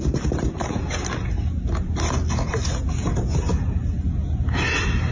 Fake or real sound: real